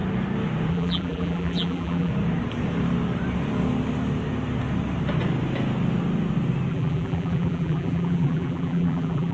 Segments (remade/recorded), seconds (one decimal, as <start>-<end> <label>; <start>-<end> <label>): 0.0-0.7 recorded; 0.7-2.1 remade; 2.1-6.7 recorded; 6.7-9.3 remade